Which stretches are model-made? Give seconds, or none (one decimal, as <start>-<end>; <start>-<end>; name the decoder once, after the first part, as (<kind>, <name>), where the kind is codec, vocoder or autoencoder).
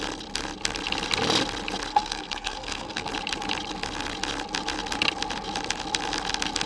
1.9-3.1 (codec, SNAC)